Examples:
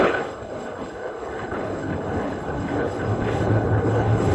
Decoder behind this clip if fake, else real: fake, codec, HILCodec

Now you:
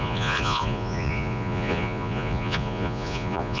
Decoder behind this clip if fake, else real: fake, vocoder, Vocos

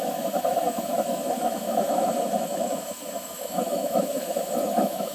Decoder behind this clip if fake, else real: fake, autoencoder, DAC-VAE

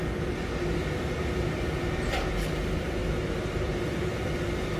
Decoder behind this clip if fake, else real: real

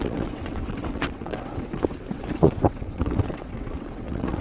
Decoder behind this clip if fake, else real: fake, vocoder, WaveNeXt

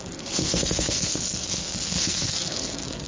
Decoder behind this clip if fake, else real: fake, codec, SNAC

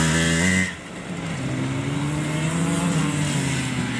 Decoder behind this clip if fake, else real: real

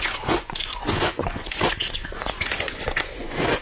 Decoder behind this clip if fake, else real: fake, vocoder, Vocos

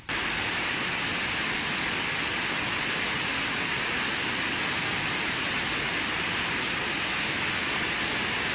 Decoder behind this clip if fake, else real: real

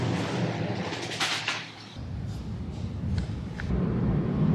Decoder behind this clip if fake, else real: fake, vocoder, BigVGAN v2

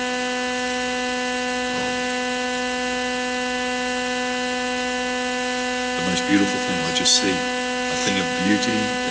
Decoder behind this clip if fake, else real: real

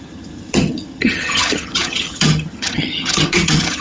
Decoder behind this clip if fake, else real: fake, vocoder, HiFi-GAN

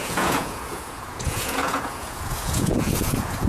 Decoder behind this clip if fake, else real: fake, vocoder, Vocos